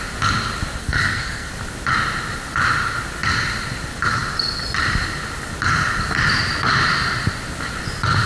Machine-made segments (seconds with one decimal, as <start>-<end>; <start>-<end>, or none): 0.8-1.5